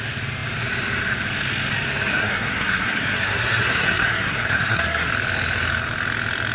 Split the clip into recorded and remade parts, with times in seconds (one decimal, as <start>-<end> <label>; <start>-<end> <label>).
0.0-2.1 recorded; 2.1-5.1 remade; 5.1-6.5 recorded